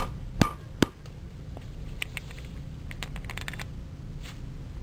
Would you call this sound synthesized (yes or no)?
no